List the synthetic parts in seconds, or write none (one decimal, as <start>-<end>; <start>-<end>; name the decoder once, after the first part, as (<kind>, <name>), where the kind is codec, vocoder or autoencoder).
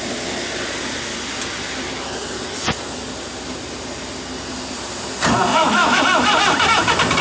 5.5-6.0 (autoencoder, DAC-VAE)